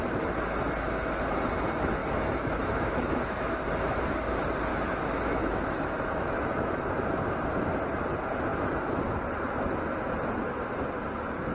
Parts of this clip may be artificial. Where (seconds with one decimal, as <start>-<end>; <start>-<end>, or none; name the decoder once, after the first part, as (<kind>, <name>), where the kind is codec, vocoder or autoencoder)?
2.0-3.6 (autoencoder, DAC-VAE); 4.7-6.9